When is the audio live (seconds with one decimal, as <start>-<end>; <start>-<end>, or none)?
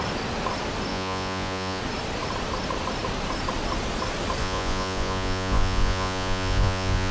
0.0-0.9; 1.8-4.4